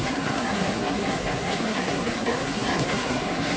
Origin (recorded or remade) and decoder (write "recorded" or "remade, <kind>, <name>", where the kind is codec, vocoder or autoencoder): remade, codec, SNAC